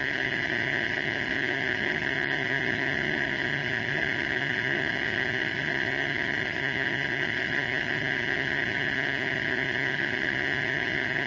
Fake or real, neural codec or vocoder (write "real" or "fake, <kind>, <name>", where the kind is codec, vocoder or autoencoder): fake, vocoder, HiFi-GAN